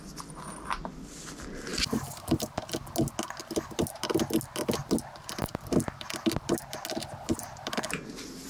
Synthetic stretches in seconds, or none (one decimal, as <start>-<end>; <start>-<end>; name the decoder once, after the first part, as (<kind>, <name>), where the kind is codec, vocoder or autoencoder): none